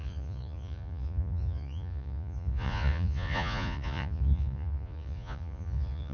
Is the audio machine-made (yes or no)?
yes